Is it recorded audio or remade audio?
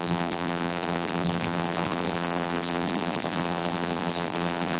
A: remade